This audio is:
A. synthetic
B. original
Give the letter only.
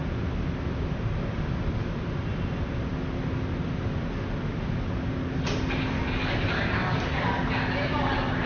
B